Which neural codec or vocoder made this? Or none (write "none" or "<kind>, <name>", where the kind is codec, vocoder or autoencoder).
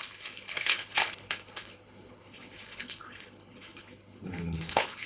codec, HILCodec